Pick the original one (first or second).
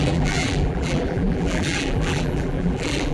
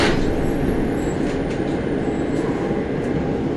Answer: second